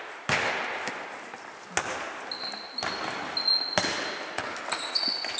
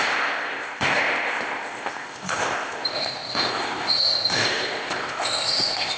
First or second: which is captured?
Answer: first